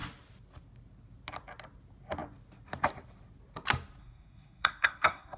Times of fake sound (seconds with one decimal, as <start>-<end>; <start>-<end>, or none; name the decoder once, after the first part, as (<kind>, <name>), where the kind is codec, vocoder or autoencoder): 4.0-5.4 (codec, SNAC)